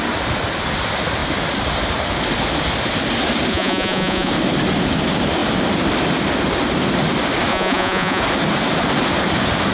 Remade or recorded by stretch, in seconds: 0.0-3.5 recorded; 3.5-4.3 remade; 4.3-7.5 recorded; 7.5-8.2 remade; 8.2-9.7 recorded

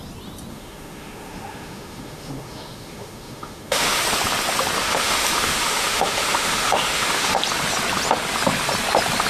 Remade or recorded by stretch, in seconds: 0.0-0.5 recorded; 0.5-4.0 remade; 4.0-4.8 recorded; 4.8-7.4 remade; 7.4-9.3 recorded

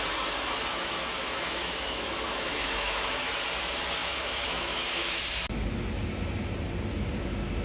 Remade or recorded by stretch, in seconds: 0.0-0.7 recorded; 0.7-3.4 remade; 3.4-4.0 recorded; 4.0-5.2 remade; 5.2-7.6 recorded

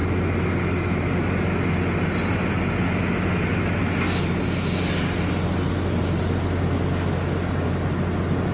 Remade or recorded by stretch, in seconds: 0.0-8.5 recorded

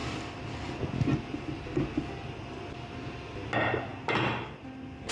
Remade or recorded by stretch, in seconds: 0.0-5.1 recorded